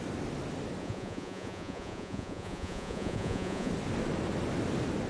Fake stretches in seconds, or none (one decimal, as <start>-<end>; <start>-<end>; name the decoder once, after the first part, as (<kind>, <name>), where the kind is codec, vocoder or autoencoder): 0.8-3.7 (vocoder, Vocos)